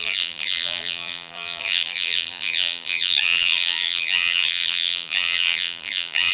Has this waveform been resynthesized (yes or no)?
yes